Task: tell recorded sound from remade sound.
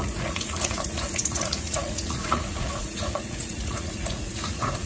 remade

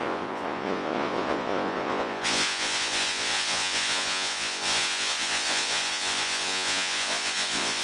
remade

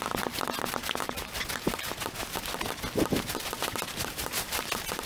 recorded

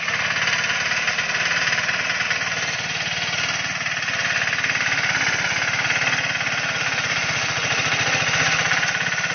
recorded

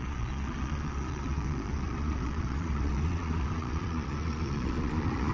remade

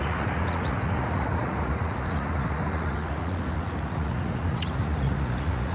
remade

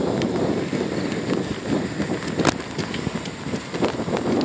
recorded